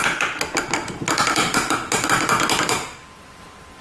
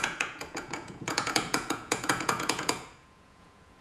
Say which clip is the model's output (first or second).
second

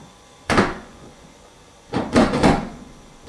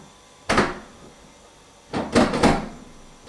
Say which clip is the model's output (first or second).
first